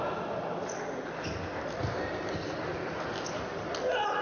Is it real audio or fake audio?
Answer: real